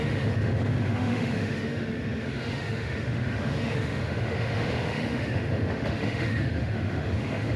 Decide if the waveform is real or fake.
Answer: fake